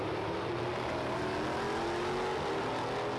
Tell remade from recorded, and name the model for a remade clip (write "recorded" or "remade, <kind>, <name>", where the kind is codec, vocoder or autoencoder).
recorded